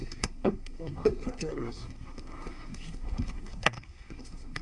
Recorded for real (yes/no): no